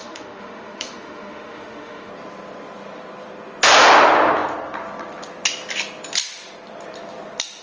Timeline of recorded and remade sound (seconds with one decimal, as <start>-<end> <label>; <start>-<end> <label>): 0.0-2.1 remade; 2.1-7.6 recorded